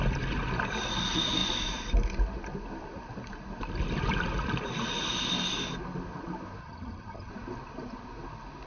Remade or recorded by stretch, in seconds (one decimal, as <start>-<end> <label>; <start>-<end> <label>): 0.0-6.6 recorded; 6.6-7.3 remade; 7.3-8.7 recorded

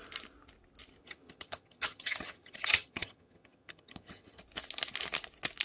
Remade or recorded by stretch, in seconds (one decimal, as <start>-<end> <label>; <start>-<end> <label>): 0.0-1.0 recorded; 1.0-4.4 remade; 4.4-5.6 recorded